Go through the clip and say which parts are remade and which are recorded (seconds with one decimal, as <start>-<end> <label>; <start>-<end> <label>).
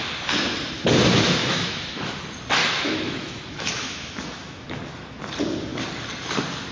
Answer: 0.0-1.4 recorded; 1.4-2.2 remade; 2.2-2.6 recorded; 2.6-4.8 remade; 4.8-6.7 recorded